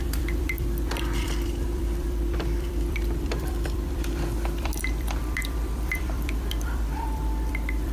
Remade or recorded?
remade